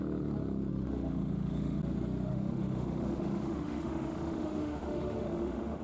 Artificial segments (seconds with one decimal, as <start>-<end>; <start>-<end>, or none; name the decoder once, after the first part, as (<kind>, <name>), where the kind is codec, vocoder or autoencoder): 0.7-1.8 (autoencoder, DAC-VAE); 2.3-5.8